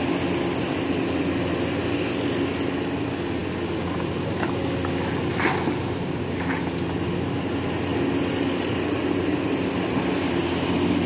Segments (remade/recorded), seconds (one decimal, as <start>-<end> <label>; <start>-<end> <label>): 0.0-11.1 recorded